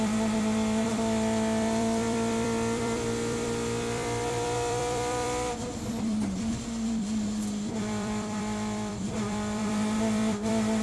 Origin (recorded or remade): remade